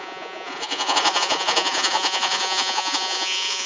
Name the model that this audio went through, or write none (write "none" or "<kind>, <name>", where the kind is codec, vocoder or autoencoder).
vocoder, Vocos